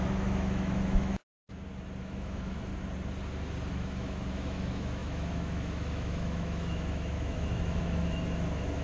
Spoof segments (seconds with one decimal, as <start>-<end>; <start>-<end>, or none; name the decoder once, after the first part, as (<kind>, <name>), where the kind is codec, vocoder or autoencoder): 0.0-1.4 (autoencoder, DAC-VAE); 2.0-2.7; 3.7-8.8